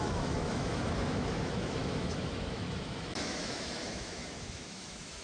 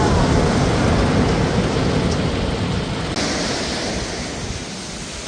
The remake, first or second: first